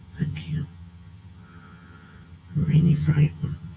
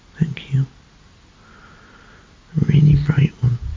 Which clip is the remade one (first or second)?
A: first